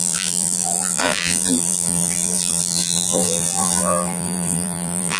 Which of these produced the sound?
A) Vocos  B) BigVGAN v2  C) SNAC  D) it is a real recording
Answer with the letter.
B